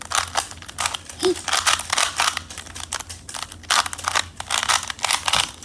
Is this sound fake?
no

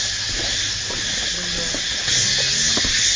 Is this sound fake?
no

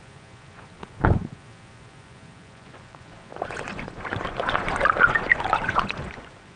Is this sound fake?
yes